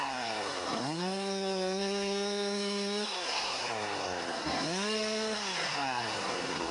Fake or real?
fake